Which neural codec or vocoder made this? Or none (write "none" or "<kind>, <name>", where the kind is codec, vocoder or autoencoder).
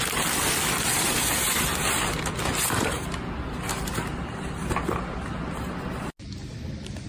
none